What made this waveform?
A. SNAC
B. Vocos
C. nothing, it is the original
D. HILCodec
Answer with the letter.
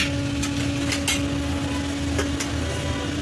C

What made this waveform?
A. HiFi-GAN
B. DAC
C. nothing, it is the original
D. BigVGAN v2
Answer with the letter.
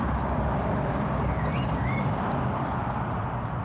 C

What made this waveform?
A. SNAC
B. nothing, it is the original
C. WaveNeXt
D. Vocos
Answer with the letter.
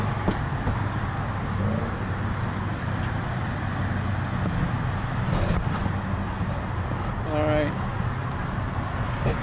B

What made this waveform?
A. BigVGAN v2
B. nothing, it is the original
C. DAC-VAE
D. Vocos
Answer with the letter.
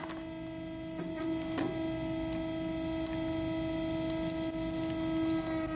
B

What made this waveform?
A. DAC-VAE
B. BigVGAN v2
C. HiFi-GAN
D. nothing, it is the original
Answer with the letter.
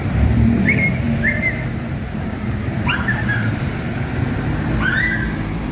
B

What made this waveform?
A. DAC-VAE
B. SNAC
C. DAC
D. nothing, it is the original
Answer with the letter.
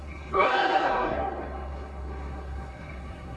B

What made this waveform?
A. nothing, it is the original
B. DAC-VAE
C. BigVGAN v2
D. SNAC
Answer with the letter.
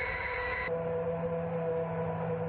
A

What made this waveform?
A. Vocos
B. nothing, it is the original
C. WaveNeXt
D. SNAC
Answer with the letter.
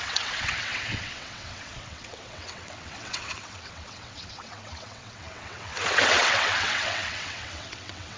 C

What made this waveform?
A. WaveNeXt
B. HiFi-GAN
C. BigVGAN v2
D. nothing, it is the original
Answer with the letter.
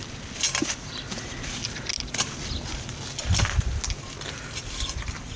D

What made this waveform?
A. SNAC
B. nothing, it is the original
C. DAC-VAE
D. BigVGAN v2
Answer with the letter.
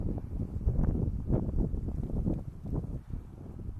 D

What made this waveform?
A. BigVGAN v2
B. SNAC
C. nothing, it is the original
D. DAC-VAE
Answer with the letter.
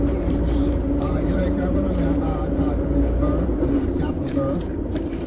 A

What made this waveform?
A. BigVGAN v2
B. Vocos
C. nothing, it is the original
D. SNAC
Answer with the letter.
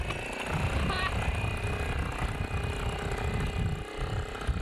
C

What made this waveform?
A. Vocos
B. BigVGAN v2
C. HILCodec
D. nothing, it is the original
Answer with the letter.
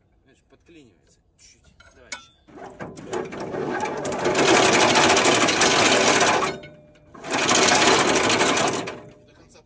D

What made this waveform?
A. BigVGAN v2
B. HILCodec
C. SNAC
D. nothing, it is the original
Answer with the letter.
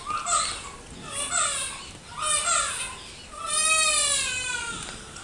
D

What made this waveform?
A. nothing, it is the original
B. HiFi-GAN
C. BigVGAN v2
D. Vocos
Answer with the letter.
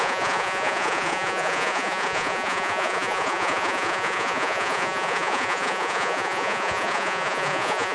D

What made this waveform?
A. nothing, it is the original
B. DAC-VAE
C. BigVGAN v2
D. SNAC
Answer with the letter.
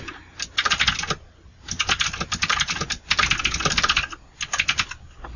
A